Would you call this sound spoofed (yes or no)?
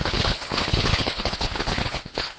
yes